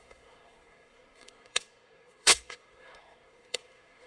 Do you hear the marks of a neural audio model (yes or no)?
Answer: yes